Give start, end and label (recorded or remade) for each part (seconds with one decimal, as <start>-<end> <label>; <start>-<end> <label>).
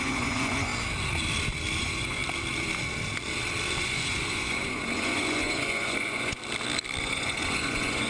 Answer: 0.0-0.7 remade; 0.7-1.8 recorded; 1.8-2.2 remade; 2.2-3.8 recorded; 3.8-6.4 remade; 6.4-7.0 recorded; 7.0-8.1 remade